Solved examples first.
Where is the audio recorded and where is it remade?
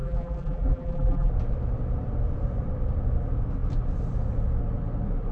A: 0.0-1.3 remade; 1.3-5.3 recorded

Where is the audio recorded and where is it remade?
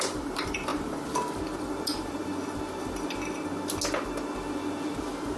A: 0.0-2.2 remade; 2.2-5.4 recorded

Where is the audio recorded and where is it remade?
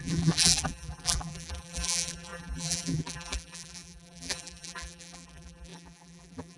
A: 0.0-6.6 remade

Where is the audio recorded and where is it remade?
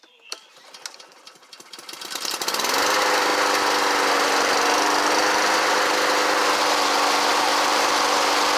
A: 0.0-7.3 recorded; 7.3-7.9 remade; 7.9-8.6 recorded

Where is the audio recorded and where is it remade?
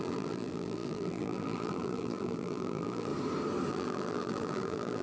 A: 0.0-3.1 remade; 3.1-3.7 recorded; 3.7-5.0 remade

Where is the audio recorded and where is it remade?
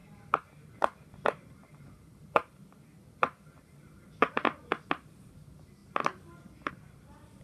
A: 0.0-1.1 recorded; 1.1-2.6 remade; 2.6-3.6 recorded; 3.6-4.7 remade; 4.7-5.2 recorded; 5.2-5.8 remade; 5.8-6.7 recorded; 6.7-7.4 remade